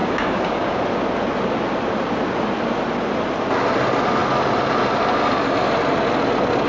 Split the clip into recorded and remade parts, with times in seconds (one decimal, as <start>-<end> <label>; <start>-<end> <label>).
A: 0.0-0.8 remade; 0.8-6.7 recorded